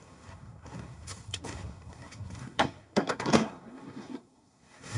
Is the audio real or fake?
fake